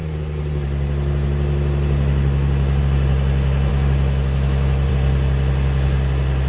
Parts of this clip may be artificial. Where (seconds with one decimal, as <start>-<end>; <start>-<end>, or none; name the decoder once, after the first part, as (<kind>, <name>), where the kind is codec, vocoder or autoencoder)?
3.7-4.9 (autoencoder, DAC-VAE)